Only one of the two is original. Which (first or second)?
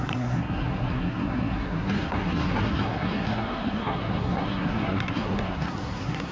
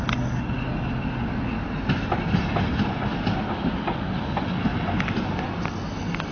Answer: second